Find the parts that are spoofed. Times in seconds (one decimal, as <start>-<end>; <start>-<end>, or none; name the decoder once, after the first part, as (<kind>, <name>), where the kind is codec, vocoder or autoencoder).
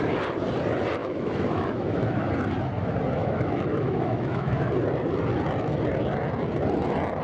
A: 1.0-2.3 (autoencoder, DAC-VAE); 3.2-4.7